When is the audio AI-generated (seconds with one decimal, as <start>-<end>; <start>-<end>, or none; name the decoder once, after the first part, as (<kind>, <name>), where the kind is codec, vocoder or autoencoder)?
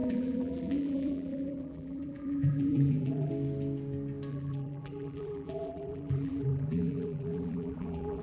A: 0.0-3.3 (vocoder, BigVGAN v2); 4.3-8.2